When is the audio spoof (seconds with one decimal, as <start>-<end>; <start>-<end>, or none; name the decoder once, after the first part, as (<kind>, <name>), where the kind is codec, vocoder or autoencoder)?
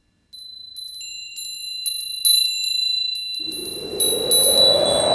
none